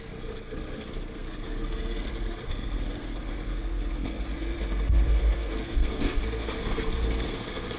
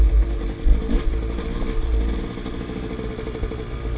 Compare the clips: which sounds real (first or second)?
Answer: second